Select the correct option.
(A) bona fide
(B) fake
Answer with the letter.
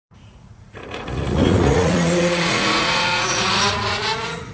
B